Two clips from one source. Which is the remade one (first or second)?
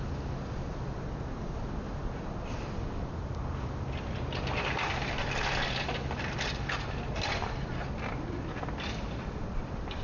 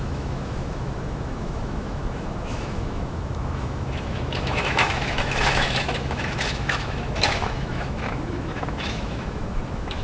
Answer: second